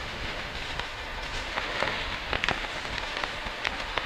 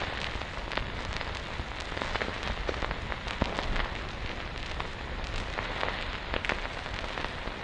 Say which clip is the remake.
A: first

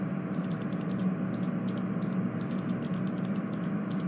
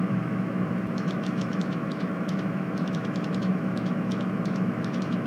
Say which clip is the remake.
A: second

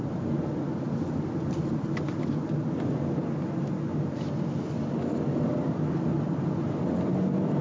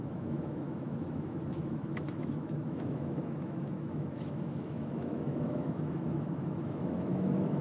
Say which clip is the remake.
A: second